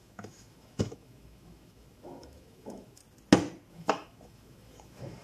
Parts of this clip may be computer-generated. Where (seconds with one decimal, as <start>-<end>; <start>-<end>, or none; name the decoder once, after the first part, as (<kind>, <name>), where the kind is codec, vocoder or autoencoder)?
0.0-3.0 (autoencoder, DAC-VAE); 3.7-5.2